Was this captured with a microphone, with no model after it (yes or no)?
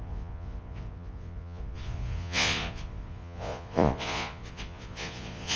no